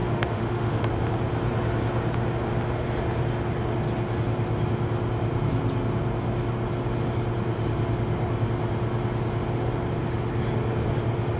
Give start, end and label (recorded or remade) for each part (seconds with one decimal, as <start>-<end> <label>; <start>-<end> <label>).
0.0-0.9 remade; 0.9-11.4 recorded